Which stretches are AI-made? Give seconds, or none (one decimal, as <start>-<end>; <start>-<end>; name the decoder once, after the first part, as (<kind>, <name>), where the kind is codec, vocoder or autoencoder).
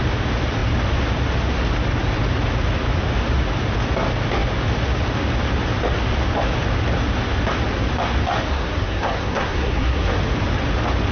8.5-10.1 (codec, SNAC)